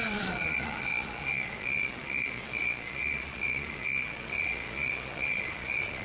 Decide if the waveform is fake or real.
fake